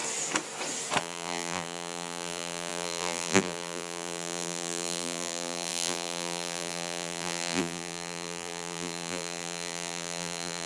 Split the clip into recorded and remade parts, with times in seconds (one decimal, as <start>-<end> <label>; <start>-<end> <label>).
0.0-1.0 recorded; 1.0-10.7 remade